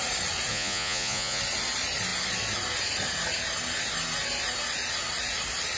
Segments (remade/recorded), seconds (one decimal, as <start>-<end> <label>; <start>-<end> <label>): 0.0-0.5 recorded; 0.5-1.4 remade; 1.4-5.8 recorded